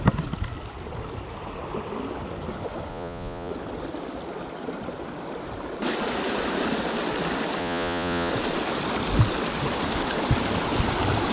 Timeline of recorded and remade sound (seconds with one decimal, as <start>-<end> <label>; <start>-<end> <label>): 0.0-2.9 recorded; 2.9-3.5 remade; 3.5-7.6 recorded; 7.6-8.3 remade; 8.3-11.3 recorded